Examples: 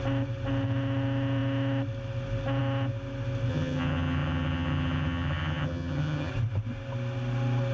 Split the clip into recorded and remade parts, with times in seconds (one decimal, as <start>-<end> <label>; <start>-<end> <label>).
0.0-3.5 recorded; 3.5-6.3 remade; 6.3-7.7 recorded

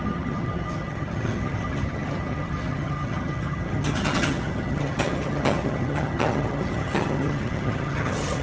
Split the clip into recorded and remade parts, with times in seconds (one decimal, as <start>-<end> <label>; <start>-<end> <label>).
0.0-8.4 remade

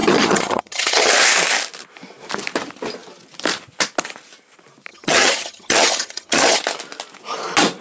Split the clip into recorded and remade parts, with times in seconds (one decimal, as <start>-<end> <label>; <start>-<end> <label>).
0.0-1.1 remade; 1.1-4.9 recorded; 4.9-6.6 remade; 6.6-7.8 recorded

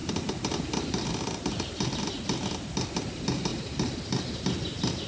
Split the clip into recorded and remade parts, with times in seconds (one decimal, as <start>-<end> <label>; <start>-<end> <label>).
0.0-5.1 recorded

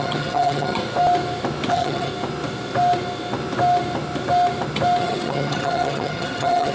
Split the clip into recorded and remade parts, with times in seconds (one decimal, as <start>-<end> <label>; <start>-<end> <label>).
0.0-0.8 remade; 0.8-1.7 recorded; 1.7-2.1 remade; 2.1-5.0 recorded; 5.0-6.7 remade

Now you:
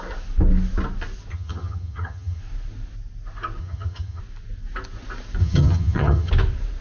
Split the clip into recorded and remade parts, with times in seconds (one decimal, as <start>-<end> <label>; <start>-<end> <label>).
0.0-1.3 recorded; 1.3-2.4 remade; 2.4-3.6 recorded; 3.6-4.2 remade; 4.2-5.4 recorded; 5.4-6.3 remade; 6.3-6.8 recorded